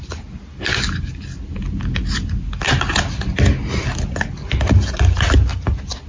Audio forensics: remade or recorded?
recorded